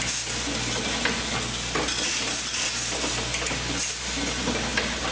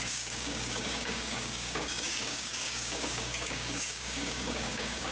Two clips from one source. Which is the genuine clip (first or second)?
first